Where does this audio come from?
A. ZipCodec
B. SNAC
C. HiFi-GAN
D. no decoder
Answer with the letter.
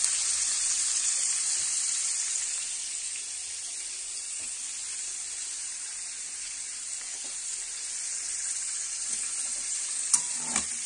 D